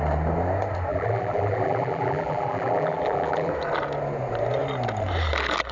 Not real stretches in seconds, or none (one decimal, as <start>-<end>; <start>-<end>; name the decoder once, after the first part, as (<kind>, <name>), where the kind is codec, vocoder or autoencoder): 0.9-3.5 (vocoder, BigVGAN v2)